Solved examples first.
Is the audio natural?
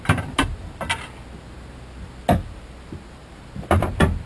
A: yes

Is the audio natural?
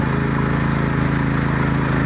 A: yes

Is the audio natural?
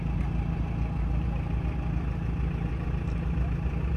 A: yes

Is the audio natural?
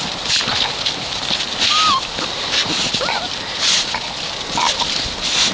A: yes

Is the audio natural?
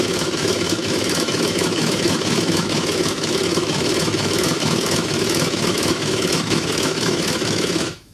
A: no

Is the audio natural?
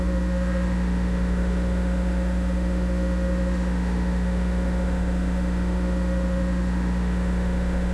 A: no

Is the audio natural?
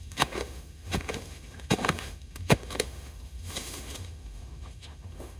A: no